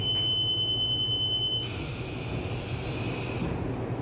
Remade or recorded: recorded